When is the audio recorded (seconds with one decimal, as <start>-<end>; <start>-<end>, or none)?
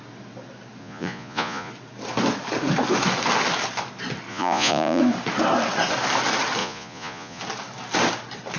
0.0-0.8; 1.7-4.3; 5.0-6.6; 7.4-8.6